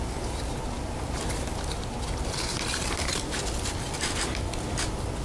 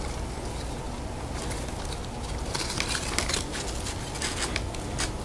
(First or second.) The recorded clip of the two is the second